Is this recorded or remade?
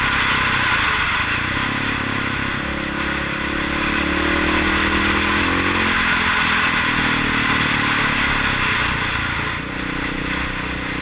recorded